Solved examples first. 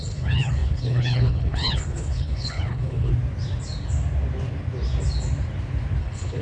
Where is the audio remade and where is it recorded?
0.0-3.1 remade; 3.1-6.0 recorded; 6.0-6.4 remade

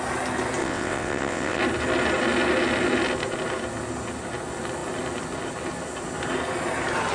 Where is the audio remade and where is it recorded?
0.0-0.6 recorded; 0.6-1.6 remade; 1.6-7.1 recorded

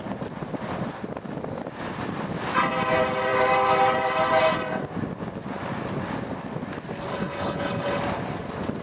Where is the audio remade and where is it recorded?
0.0-7.1 recorded; 7.1-8.0 remade; 8.0-8.8 recorded